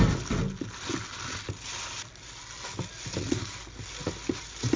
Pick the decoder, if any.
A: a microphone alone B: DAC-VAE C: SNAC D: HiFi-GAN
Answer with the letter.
A